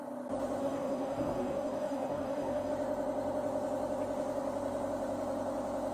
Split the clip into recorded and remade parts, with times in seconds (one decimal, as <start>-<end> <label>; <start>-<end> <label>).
0.0-0.6 recorded; 0.6-2.7 remade; 2.7-5.9 recorded